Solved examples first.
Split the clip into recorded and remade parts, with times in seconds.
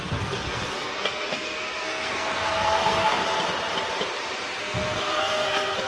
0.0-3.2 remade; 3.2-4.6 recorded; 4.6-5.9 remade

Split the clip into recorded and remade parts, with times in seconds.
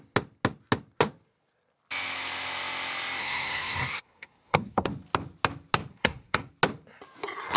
0.0-3.2 recorded; 3.2-4.9 remade; 4.9-5.9 recorded; 5.9-6.5 remade; 6.5-7.6 recorded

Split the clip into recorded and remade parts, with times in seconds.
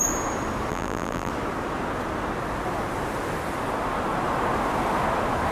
0.0-0.7 recorded; 0.7-1.3 remade; 1.3-5.5 recorded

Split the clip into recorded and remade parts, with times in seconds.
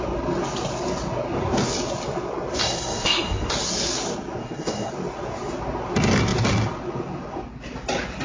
0.0-2.6 recorded; 2.6-3.5 remade; 3.5-4.4 recorded; 4.4-4.9 remade; 4.9-8.2 recorded